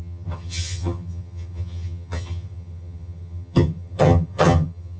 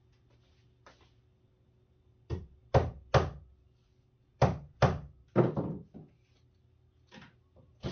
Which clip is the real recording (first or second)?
second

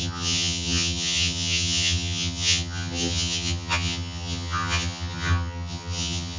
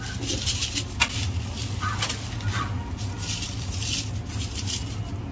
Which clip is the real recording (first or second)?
second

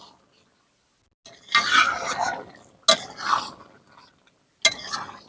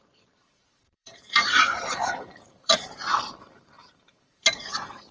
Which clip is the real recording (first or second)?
first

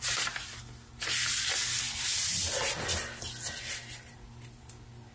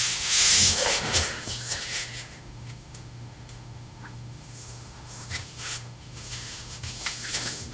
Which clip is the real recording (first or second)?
first